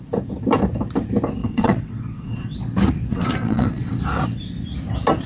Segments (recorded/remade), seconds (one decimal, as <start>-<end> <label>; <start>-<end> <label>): 0.0-1.4 recorded; 1.4-2.6 remade; 2.6-3.1 recorded; 3.1-3.9 remade; 3.9-5.3 recorded